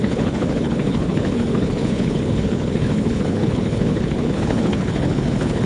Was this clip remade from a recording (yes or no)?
yes